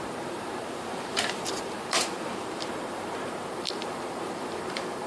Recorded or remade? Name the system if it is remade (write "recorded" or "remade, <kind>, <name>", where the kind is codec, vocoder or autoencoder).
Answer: remade, vocoder, BigVGAN v2